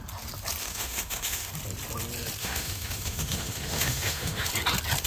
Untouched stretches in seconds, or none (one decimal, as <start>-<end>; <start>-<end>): 0.0-0.6; 1.5-2.4; 4.5-5.1